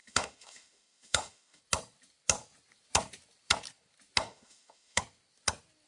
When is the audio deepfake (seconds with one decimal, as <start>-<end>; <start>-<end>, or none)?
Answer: 0.0-1.6; 4.2-5.0

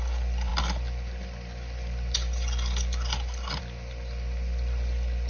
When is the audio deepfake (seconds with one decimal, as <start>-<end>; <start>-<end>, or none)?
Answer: none